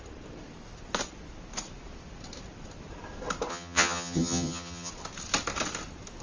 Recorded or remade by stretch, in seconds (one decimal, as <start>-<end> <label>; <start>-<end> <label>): 0.0-3.5 recorded; 3.5-4.9 remade; 4.9-6.2 recorded